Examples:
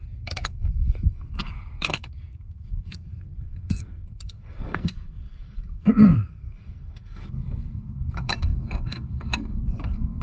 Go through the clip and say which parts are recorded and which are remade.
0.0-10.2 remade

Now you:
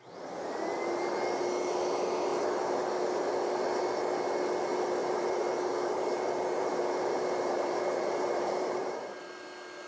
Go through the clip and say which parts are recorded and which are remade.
0.0-5.0 recorded; 5.0-9.3 remade; 9.3-9.9 recorded

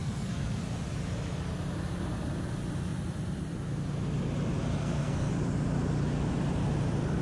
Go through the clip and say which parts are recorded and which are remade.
0.0-0.6 remade; 0.6-4.8 recorded; 4.8-5.3 remade; 5.3-7.2 recorded

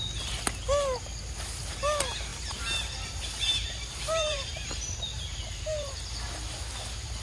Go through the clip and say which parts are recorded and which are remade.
0.0-2.3 recorded; 2.3-5.9 remade; 5.9-7.2 recorded

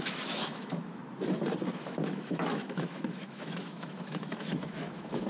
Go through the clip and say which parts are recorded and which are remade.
0.0-1.0 remade; 1.0-1.7 recorded; 1.7-5.3 remade

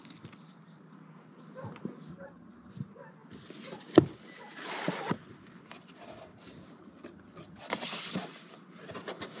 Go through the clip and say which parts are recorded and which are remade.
0.0-2.1 recorded; 2.1-2.7 remade; 2.7-6.8 recorded; 6.8-7.6 remade; 7.6-9.4 recorded